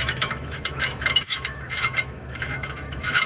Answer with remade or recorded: remade